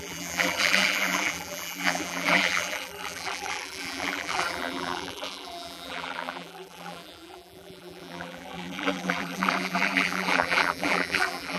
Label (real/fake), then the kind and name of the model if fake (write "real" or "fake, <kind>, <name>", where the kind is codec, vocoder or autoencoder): fake, vocoder, BigVGAN v2